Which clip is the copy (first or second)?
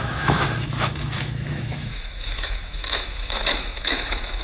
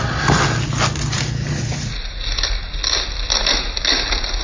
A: first